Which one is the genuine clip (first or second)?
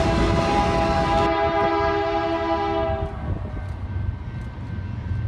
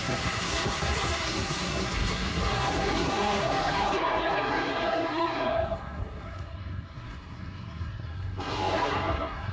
first